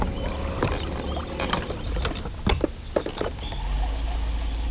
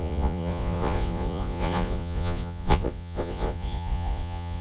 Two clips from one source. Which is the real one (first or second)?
first